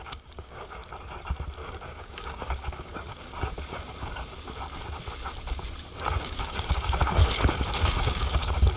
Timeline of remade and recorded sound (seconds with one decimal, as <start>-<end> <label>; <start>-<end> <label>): 0.0-0.8 remade; 0.8-1.7 recorded; 1.7-4.3 remade; 4.3-6.2 recorded; 6.2-7.2 remade; 7.2-7.9 recorded; 7.9-8.8 remade